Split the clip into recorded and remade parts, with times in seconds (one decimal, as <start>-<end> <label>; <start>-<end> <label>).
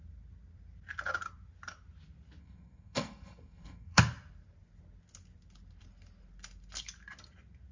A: 0.0-2.4 recorded; 2.4-4.0 remade; 4.0-7.7 recorded